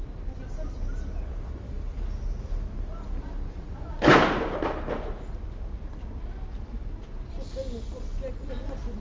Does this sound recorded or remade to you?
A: recorded